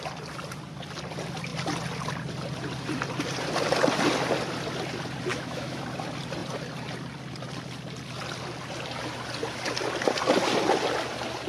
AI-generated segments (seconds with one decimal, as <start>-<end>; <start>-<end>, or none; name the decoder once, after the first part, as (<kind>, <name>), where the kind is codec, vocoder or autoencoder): 5.3-5.8 (autoencoder, DAC-VAE)